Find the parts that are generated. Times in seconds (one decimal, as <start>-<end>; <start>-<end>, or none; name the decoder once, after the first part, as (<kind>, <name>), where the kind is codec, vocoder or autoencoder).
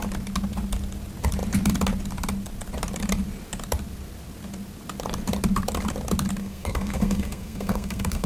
6.4-8.3 (codec, SNAC)